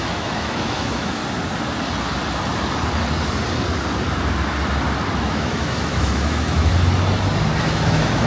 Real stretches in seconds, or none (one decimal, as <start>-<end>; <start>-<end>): 1.2-5.2; 6.7-7.6